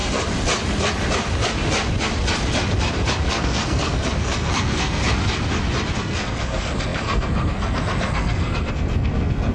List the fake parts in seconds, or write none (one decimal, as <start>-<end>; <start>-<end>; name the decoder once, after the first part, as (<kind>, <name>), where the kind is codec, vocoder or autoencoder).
3.3-5.0 (codec, SNAC); 6.0-9.5

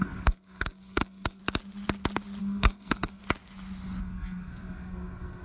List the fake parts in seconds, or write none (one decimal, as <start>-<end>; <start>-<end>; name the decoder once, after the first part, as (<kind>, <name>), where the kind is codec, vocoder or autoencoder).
0.0-1.4 (codec, SNAC); 2.4-3.2; 4.0-5.4

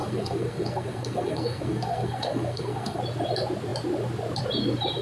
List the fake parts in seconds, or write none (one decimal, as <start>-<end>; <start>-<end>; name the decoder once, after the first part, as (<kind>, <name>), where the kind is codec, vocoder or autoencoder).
0.0-3.0 (codec, SNAC)

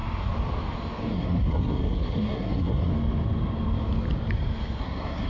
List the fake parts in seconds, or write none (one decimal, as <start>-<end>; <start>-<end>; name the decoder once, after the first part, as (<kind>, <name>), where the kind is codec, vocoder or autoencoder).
1.1-2.9 (codec, SNAC); 4.8-5.3

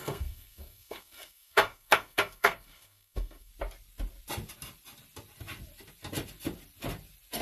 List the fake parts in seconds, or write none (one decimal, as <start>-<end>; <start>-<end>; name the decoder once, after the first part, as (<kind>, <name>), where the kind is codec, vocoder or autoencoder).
0.0-3.5 (codec, SNAC)

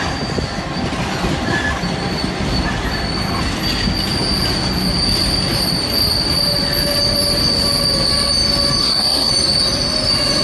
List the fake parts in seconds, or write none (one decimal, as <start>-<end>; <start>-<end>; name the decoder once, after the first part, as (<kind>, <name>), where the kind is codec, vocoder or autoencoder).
8.8-9.3 (codec, SNAC)

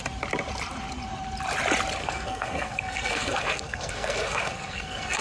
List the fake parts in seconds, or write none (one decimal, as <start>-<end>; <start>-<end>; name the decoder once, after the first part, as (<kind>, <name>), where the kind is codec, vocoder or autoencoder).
2.0-5.2 (codec, SNAC)